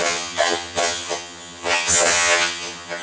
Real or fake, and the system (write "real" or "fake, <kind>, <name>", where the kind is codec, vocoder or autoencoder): fake, vocoder, HiFi-GAN